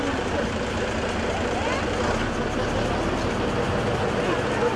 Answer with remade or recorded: recorded